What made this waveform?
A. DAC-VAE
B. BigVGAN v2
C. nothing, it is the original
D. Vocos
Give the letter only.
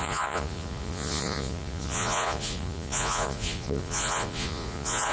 D